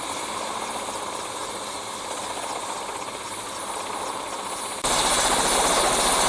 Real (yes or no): yes